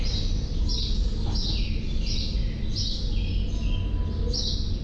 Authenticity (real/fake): real